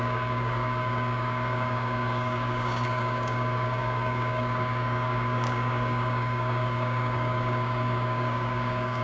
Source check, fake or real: fake